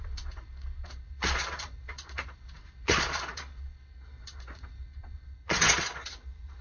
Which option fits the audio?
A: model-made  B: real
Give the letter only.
A